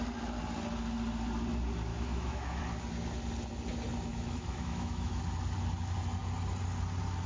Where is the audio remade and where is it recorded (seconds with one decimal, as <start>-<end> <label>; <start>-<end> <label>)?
0.0-1.9 recorded; 1.9-2.6 remade; 2.6-4.1 recorded; 4.1-5.2 remade; 5.2-7.3 recorded